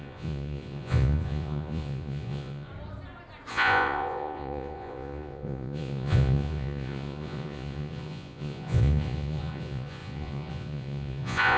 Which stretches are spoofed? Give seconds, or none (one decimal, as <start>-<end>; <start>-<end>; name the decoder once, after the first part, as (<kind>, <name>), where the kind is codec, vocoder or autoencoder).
0.0-2.7 (vocoder, Vocos); 3.5-11.6